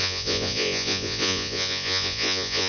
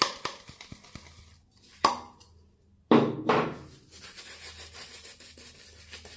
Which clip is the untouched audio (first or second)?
second